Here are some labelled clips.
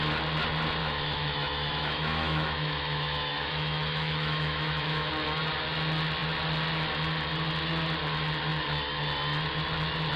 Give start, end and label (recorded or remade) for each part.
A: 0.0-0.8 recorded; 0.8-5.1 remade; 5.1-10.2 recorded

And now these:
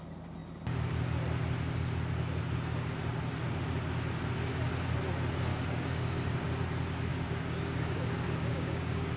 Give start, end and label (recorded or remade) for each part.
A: 0.0-5.5 recorded; 5.5-6.5 remade; 6.5-7.1 recorded; 7.1-9.2 remade

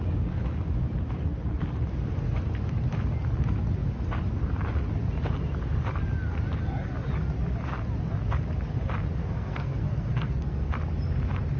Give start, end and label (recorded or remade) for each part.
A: 0.0-9.2 recorded; 9.2-10.7 remade; 10.7-11.6 recorded

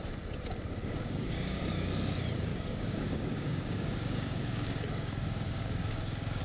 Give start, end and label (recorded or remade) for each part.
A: 0.0-0.8 recorded; 0.8-1.6 remade; 1.6-2.5 recorded; 2.5-6.4 remade

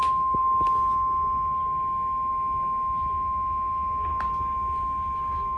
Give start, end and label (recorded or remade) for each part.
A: 0.0-5.6 recorded

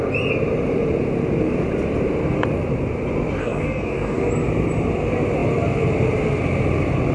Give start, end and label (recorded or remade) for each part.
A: 0.0-3.4 recorded; 3.4-4.3 remade; 4.3-7.1 recorded

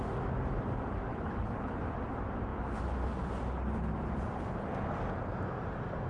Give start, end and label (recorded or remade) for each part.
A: 0.0-1.1 recorded; 1.1-1.8 remade; 1.8-6.1 recorded

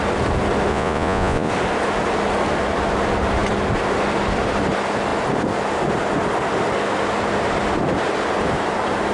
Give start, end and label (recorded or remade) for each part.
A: 0.0-0.7 recorded; 0.7-1.5 remade; 1.5-9.1 recorded